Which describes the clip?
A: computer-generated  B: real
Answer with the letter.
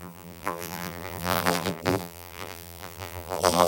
A